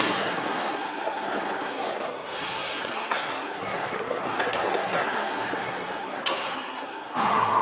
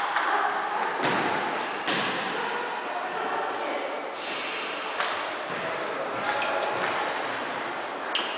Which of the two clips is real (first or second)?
second